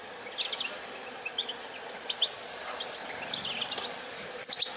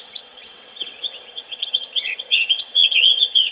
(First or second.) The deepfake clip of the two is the second